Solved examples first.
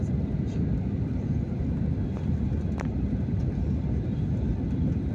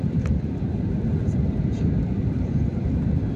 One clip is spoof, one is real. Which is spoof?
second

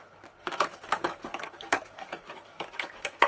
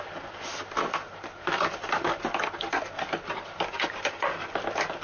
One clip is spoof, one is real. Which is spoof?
first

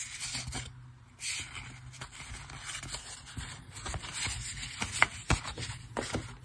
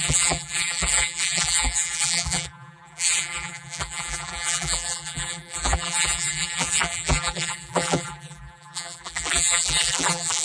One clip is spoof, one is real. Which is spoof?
second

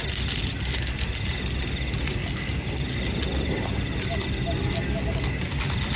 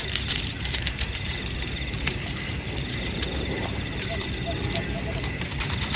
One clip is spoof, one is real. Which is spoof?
second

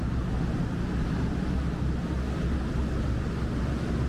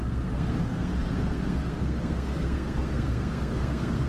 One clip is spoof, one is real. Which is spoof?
second